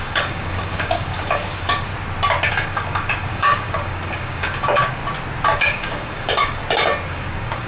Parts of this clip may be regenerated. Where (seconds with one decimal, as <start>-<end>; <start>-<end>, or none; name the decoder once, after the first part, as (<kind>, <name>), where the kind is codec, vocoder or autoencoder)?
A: 0.0-1.9 (codec, DAC); 2.5-5.0; 5.6-6.6; 7.1-7.7